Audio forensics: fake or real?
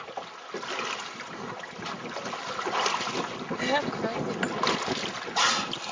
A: real